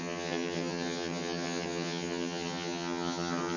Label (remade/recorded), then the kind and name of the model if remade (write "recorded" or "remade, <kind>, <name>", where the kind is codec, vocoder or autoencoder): remade, vocoder, HiFi-GAN